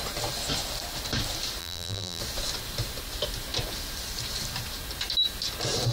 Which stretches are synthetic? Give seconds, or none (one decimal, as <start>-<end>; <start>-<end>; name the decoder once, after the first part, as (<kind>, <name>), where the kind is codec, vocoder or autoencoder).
1.6-2.2 (vocoder, BigVGAN v2)